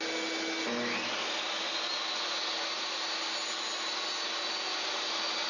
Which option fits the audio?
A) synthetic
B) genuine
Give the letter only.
B